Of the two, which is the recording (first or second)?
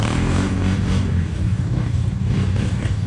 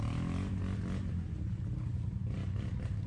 second